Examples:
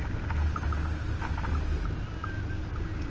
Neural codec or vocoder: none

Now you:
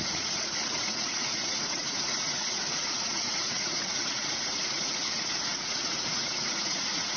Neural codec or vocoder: vocoder, Vocos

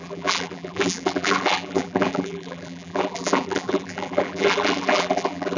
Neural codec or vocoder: vocoder, BigVGAN v2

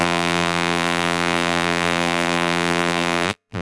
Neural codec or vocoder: vocoder, BigVGAN v2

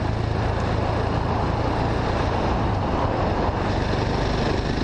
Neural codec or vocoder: none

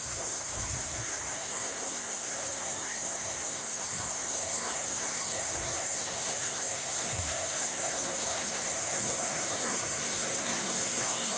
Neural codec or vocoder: codec, SNAC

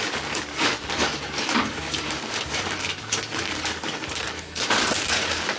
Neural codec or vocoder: codec, DAC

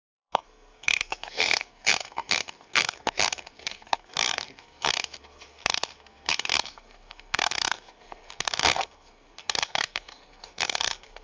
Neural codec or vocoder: codec, SNAC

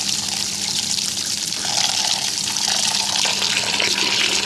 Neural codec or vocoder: none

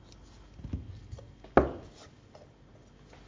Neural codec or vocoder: none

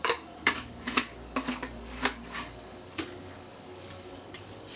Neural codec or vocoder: codec, DAC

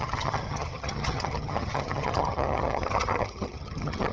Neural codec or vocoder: vocoder, HiFi-GAN